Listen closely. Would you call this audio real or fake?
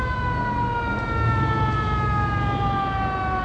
real